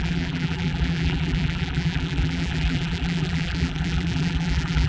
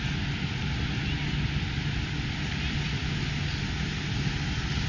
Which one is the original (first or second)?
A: second